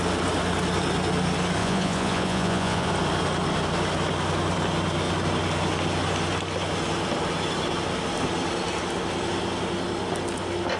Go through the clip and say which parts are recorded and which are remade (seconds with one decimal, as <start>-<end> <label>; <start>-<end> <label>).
0.0-1.6 recorded; 1.6-2.9 remade; 2.9-10.8 recorded